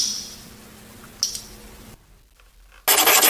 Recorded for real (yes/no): yes